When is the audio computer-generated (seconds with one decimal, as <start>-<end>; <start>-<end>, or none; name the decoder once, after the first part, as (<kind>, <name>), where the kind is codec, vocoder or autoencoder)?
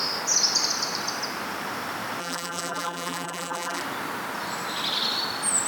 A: 2.2-3.8 (vocoder, BigVGAN v2)